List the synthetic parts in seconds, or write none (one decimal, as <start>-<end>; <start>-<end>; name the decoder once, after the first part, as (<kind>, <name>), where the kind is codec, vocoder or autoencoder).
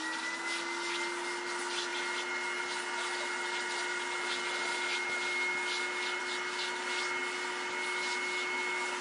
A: none